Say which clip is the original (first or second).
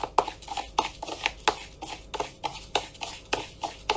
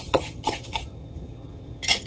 first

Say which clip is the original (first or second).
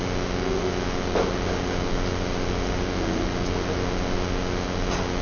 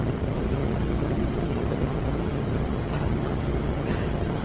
first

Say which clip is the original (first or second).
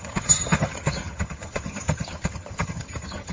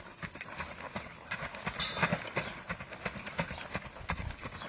second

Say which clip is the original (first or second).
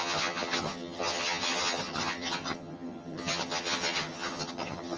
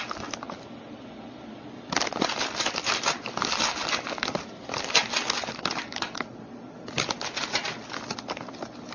second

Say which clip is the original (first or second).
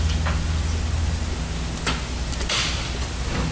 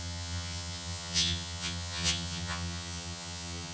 first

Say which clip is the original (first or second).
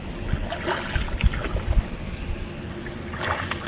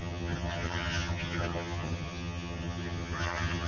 first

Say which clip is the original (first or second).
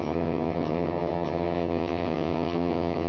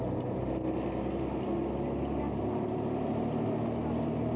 second